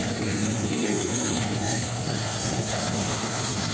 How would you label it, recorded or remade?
remade